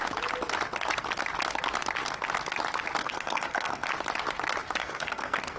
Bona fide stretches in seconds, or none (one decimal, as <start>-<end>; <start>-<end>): 0.0-3.0; 3.9-4.8